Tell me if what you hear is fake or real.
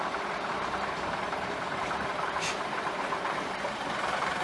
fake